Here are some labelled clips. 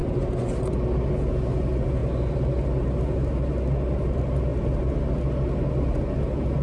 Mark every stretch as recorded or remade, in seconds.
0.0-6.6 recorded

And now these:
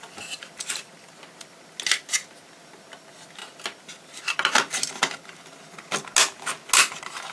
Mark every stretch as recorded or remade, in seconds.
0.0-7.3 recorded

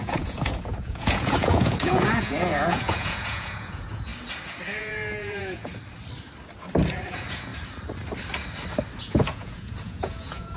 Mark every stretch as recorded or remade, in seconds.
0.0-4.1 remade; 4.1-4.8 recorded; 4.8-5.7 remade; 5.7-7.1 recorded; 7.1-7.5 remade; 7.5-9.0 recorded; 9.0-10.6 remade